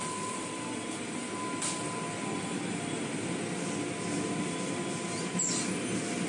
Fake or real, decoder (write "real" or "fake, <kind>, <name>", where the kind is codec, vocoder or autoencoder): real